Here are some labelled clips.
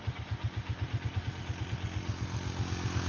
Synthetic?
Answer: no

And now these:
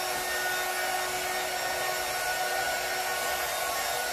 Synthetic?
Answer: no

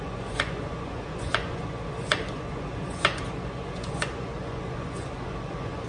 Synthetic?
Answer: yes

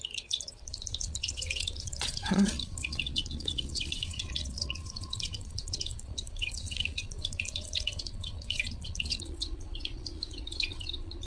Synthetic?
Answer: yes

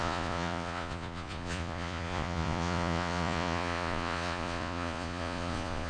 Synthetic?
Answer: yes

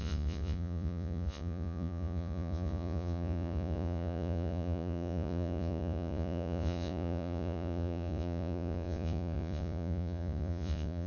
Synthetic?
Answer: yes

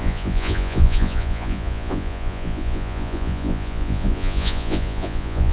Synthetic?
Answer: yes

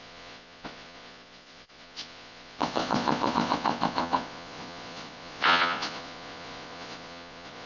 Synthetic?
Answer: yes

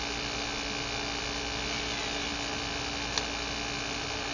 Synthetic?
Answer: no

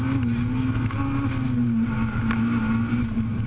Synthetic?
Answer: no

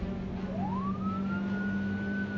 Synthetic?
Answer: no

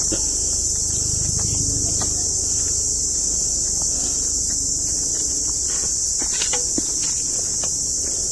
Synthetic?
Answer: no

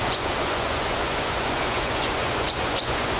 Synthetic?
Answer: yes